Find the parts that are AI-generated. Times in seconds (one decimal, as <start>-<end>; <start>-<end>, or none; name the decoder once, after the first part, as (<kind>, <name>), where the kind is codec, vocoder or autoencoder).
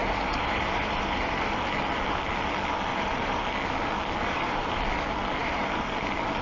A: 0.0-1.6 (vocoder, BigVGAN v2); 2.9-3.4; 4.2-4.8; 5.4-5.9